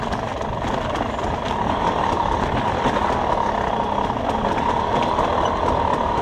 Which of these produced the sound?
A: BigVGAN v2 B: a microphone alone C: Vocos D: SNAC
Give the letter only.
B